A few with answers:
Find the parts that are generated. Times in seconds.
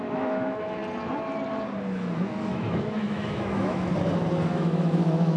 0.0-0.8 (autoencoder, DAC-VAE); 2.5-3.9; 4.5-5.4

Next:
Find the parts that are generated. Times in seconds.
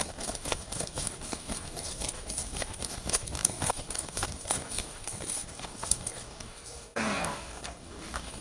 0.0-8.4 (codec, DAC)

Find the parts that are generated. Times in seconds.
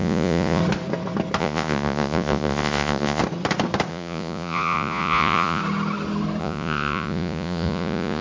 0.0-0.6 (vocoder, Vocos); 1.4-3.2; 3.9-5.6; 6.4-8.2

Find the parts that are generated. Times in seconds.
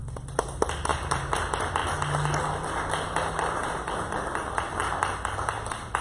0.0-0.9 (vocoder, BigVGAN v2); 1.4-1.8; 2.4-6.0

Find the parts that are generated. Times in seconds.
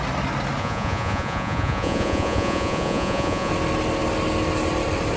0.6-3.5 (vocoder, Vocos)